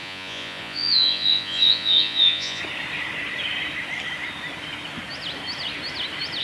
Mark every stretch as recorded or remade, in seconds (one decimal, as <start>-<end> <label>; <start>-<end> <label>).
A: 0.0-2.6 remade; 2.6-6.4 recorded